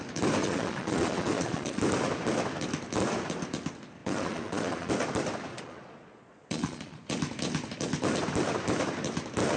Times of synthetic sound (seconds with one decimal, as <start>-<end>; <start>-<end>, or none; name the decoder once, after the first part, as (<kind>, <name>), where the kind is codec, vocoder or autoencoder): 0.4-1.8 (vocoder, Vocos); 4.0-4.9; 5.5-7.0